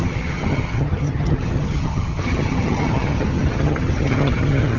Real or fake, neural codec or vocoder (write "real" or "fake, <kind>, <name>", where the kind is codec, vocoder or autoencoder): fake, vocoder, HiFi-GAN